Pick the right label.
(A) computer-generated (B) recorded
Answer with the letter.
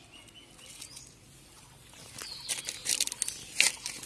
B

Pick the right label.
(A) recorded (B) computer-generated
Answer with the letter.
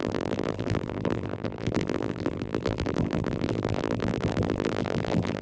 B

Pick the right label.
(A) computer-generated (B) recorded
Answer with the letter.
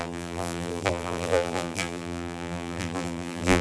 A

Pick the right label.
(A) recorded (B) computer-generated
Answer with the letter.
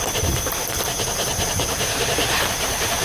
B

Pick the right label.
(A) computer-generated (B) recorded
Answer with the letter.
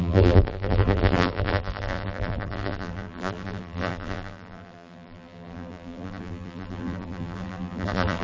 A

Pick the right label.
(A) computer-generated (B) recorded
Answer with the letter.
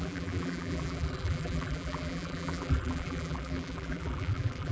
A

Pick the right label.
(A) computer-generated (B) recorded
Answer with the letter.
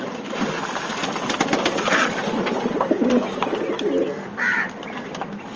A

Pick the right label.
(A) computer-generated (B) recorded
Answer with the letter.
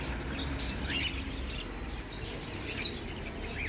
B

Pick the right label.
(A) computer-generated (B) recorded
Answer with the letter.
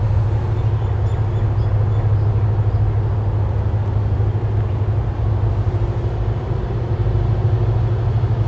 B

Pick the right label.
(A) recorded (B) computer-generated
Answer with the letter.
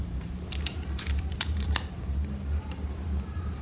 B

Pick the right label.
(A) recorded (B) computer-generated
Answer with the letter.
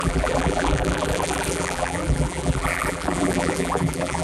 B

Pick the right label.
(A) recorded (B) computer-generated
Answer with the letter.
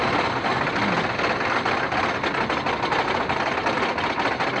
A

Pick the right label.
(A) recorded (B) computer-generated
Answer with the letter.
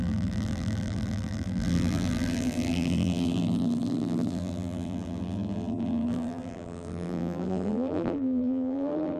B